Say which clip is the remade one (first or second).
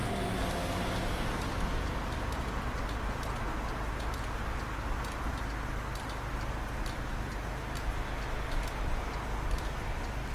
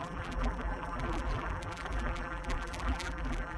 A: second